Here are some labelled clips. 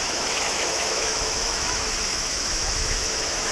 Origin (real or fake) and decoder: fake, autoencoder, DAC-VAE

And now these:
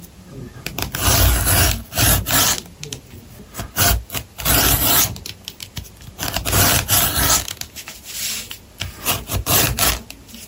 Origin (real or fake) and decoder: real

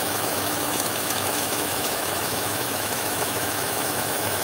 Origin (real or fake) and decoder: fake, autoencoder, DAC-VAE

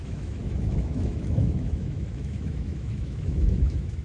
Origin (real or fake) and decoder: fake, autoencoder, DAC-VAE